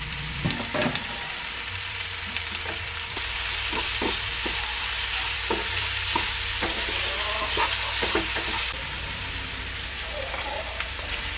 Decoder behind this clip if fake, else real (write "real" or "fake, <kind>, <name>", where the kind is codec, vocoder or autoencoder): fake, vocoder, BigVGAN v2